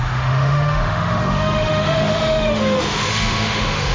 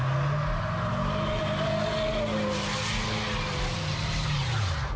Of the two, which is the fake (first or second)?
first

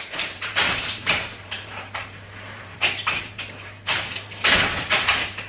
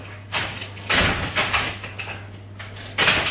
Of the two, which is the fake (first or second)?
first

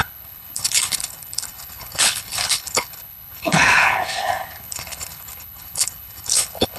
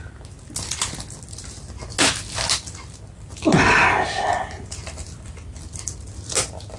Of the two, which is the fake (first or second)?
first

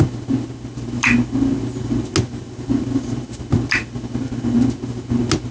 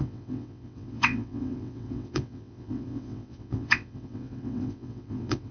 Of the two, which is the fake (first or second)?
second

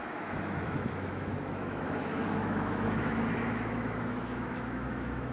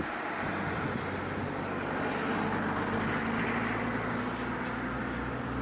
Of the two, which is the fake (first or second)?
first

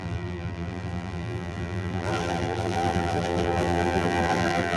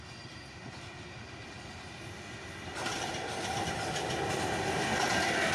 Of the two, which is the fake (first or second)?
first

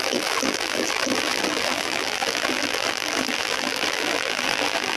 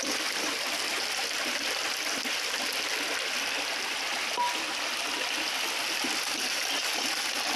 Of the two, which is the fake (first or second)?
first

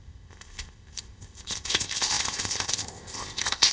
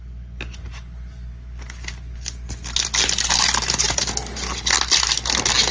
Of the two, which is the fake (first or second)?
first